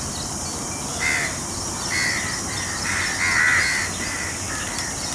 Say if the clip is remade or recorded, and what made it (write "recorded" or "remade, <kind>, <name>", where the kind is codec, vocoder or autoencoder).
recorded